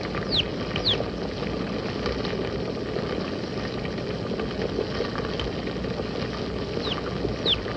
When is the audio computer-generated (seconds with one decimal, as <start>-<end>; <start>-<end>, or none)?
none